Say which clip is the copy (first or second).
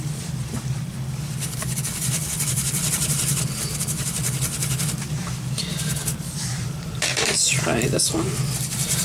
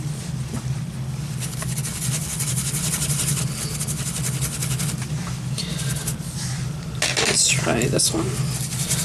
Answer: first